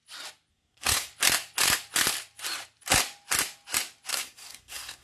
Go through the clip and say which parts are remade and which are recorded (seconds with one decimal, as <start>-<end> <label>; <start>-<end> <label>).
0.0-0.5 recorded; 0.5-1.1 remade; 1.1-4.1 recorded; 4.1-5.0 remade